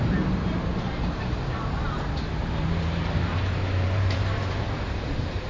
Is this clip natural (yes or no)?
no